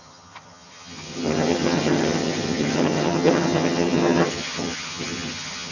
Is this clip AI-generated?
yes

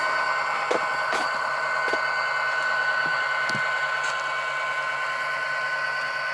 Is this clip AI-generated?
no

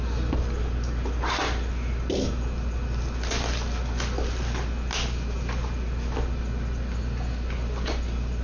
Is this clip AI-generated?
no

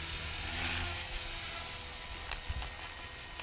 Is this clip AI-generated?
no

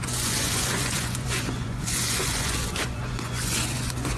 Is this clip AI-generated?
yes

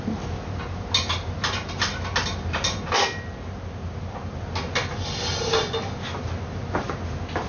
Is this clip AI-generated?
no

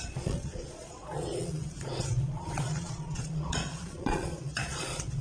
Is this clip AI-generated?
yes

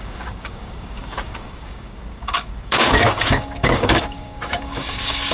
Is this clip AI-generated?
yes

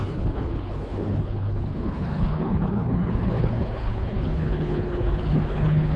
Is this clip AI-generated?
yes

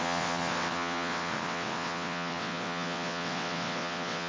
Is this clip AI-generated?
yes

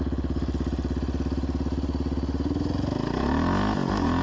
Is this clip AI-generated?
no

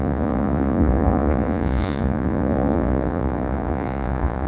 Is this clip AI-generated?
yes